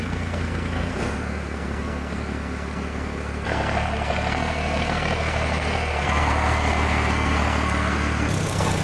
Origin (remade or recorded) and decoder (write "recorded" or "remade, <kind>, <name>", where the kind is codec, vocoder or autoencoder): remade, codec, SNAC